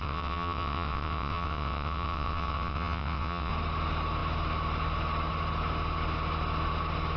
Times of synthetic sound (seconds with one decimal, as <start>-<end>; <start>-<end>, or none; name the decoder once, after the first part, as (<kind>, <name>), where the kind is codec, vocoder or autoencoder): 0.0-3.5 (vocoder, WaveNeXt)

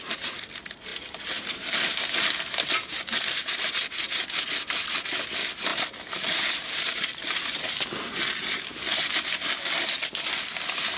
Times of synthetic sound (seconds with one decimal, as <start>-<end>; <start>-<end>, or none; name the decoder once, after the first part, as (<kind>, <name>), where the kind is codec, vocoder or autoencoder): none

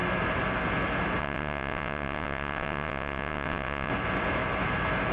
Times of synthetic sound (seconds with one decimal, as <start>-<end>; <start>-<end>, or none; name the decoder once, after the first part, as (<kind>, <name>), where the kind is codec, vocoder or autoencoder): 1.2-3.9 (vocoder, WaveNeXt)

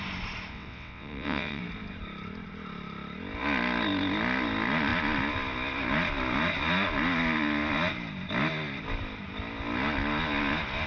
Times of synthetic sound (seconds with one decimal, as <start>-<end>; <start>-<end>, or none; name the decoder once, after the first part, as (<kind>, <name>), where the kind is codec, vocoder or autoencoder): 0.5-1.6 (vocoder, WaveNeXt)

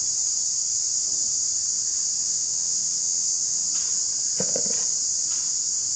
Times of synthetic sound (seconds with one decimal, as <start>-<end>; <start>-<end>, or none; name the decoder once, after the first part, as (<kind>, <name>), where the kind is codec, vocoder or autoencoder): 2.2-3.6 (vocoder, WaveNeXt)

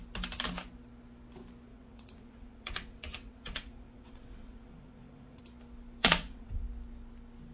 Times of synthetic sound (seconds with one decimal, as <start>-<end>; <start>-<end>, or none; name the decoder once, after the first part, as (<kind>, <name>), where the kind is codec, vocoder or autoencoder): 1.7-5.4 (vocoder, WaveNeXt); 6.0-6.6